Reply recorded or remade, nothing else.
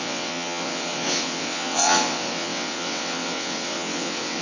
remade